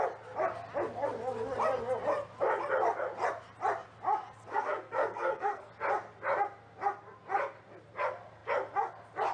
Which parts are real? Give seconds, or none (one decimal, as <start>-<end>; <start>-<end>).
0.0-4.5; 5.7-9.3